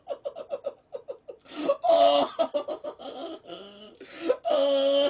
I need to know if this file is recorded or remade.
recorded